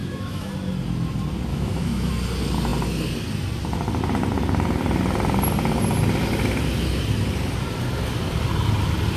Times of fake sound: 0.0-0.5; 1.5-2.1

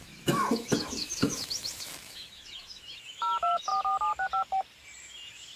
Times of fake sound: 0.0-3.7; 5.0-5.6

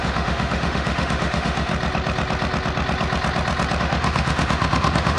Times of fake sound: 0.0-1.7; 3.8-5.2